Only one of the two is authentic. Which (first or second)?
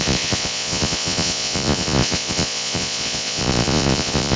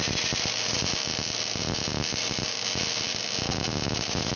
second